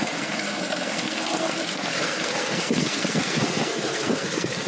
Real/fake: fake